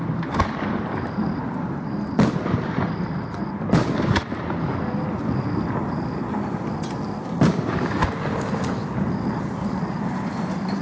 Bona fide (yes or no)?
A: yes